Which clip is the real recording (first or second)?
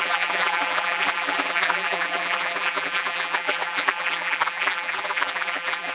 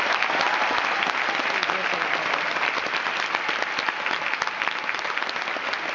second